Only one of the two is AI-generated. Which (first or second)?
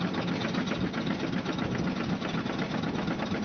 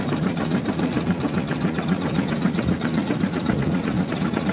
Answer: second